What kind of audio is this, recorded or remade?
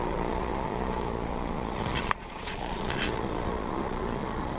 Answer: remade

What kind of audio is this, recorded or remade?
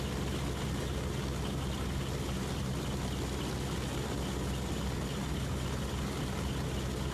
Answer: recorded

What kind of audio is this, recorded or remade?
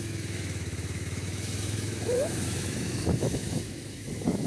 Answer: remade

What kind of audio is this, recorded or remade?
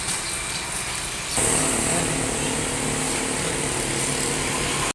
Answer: recorded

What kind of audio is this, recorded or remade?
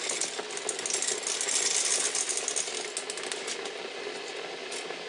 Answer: recorded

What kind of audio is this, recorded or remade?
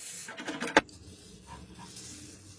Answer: recorded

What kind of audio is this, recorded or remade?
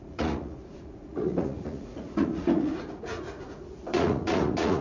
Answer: remade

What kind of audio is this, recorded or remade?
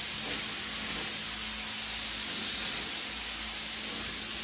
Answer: recorded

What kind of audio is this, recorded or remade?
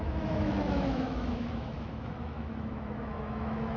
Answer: remade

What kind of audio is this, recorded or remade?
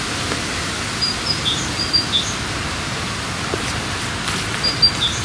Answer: recorded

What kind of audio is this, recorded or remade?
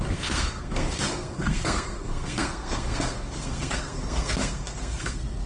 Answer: remade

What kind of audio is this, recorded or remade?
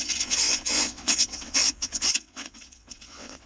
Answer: remade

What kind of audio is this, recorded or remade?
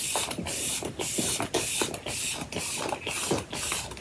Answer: recorded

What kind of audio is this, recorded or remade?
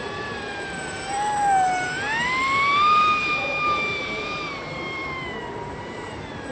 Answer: remade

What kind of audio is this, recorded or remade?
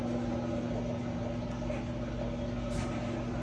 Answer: recorded